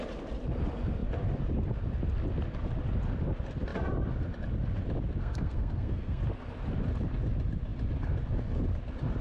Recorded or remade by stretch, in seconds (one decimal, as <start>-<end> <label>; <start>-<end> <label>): 0.0-5.2 recorded; 5.2-6.2 remade; 6.2-9.2 recorded